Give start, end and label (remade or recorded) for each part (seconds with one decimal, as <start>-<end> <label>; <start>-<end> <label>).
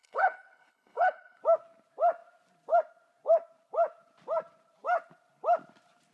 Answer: 0.0-1.4 remade; 1.4-6.1 recorded